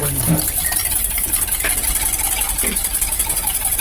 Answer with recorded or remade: recorded